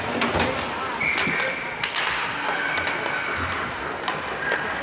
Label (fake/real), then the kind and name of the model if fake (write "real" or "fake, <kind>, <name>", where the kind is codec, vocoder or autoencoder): real